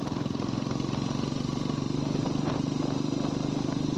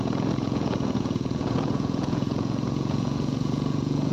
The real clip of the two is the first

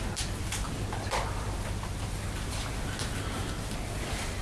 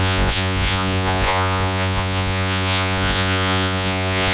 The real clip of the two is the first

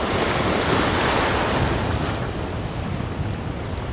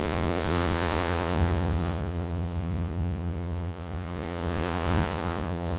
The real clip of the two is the first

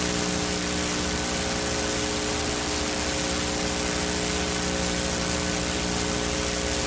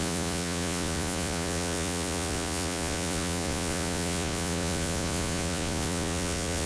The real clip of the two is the first